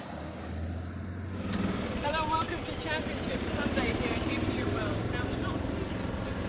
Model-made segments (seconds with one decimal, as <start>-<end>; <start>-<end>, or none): 3.3-5.7